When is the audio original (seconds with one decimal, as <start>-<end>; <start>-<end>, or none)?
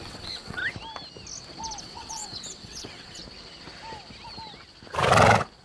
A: 0.6-1.8; 3.2-5.6